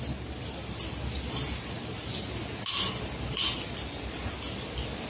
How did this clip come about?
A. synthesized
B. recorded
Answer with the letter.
B